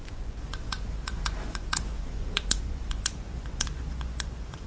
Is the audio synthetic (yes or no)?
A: yes